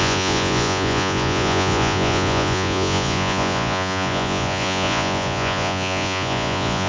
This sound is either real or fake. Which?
fake